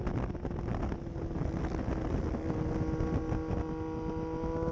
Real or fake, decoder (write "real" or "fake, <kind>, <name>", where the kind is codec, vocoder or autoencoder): real